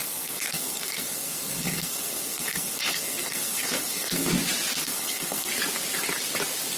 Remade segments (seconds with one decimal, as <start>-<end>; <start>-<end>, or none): 0.0-4.3; 4.8-5.5